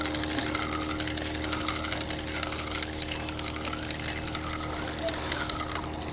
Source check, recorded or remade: recorded